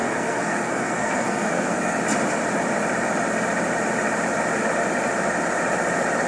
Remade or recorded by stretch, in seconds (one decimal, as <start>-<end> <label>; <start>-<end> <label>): 0.0-2.0 remade; 2.0-6.3 recorded